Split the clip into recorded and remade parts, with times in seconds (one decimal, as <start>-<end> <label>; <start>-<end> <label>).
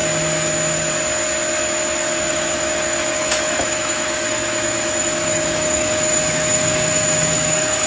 0.0-2.3 recorded; 2.3-7.9 remade